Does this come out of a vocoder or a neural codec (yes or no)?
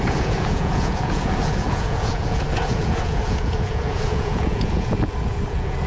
yes